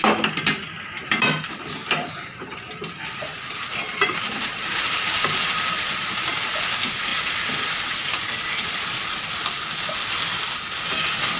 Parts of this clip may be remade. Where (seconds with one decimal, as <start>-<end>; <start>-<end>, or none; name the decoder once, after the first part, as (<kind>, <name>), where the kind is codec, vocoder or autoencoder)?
3.3-5.9 (vocoder, BigVGAN v2)